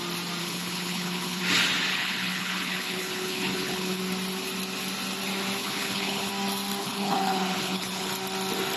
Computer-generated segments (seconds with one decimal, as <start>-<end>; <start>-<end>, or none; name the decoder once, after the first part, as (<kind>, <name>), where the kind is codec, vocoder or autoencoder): 0.4-1.4 (codec, HILCodec); 1.9-4.0; 5.6-6.3; 6.8-8.1